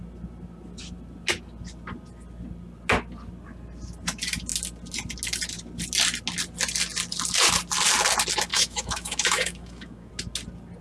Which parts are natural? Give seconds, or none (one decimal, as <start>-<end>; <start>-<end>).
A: 0.0-8.5; 10.1-10.8

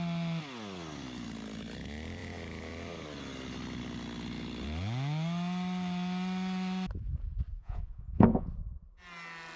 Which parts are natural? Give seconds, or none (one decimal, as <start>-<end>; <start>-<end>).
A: 0.0-7.6; 8.5-9.6

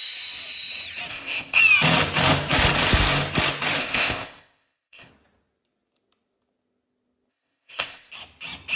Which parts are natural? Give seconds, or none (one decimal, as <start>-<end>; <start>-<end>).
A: 0.0-1.1; 1.6-3.8; 5.1-7.3; 8.1-8.8

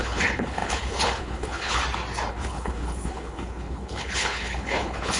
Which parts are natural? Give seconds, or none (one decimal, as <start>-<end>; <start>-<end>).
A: 1.8-2.3

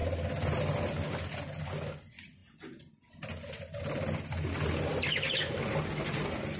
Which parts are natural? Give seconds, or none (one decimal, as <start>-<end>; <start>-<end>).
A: 0.0-6.6

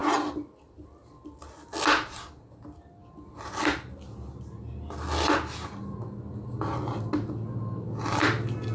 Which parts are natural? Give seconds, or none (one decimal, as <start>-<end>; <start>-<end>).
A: 0.0-8.7

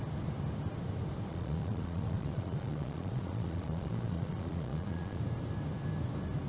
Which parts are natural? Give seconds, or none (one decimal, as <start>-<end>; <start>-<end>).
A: 0.0-1.3; 5.2-6.5